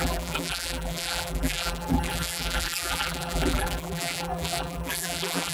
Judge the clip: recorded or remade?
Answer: remade